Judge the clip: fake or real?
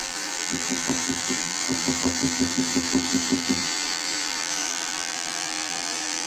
fake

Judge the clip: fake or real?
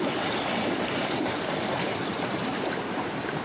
fake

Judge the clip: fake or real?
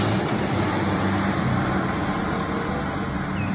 real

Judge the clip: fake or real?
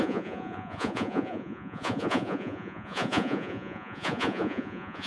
fake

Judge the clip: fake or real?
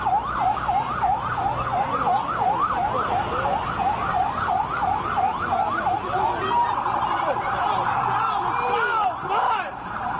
real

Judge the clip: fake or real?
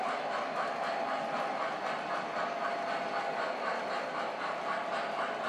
real